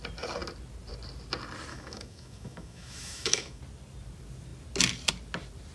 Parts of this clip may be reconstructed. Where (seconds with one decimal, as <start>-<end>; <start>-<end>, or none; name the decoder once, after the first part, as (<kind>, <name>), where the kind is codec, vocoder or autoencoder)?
1.7-3.6 (autoencoder, DAC-VAE)